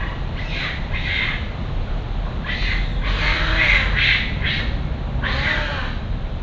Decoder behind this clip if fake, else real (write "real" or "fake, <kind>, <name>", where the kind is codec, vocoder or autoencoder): real